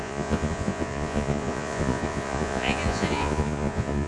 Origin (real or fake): fake